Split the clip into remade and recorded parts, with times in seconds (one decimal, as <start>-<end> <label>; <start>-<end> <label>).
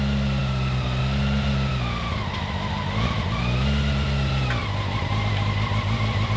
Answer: 0.0-6.4 recorded